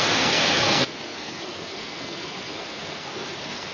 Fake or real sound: fake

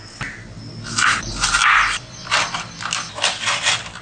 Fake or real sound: real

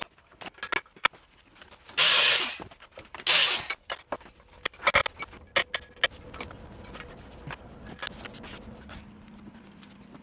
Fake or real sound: real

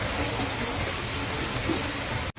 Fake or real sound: real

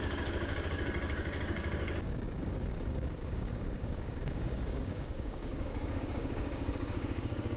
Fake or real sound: fake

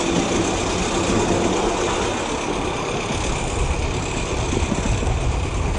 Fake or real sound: real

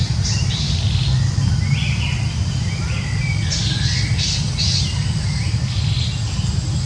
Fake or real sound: real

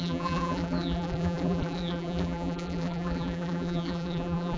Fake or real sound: fake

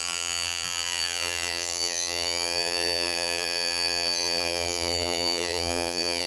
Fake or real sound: fake